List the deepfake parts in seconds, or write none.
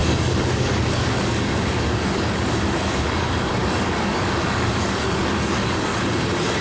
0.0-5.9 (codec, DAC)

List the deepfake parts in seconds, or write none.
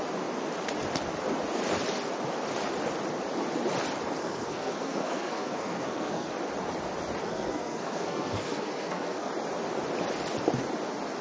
4.2-6.3 (codec, SNAC); 7.2-9.3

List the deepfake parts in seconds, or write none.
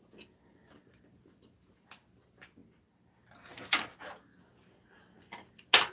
none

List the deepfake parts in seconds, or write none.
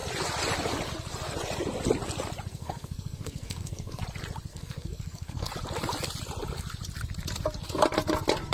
2.5-4.0 (codec, SNAC); 4.5-5.5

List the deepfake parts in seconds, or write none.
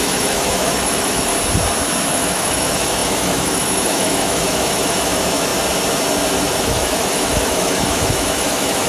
0.0-1.3 (autoencoder, DAC-VAE); 2.1-5.5; 6.6-8.9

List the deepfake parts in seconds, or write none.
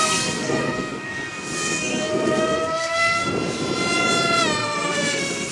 0.0-3.3 (codec, SNAC); 4.6-5.5